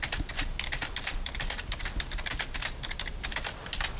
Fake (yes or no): no